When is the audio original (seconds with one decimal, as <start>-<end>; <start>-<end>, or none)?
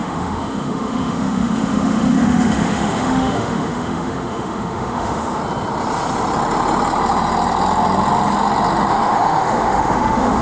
5.4-8.9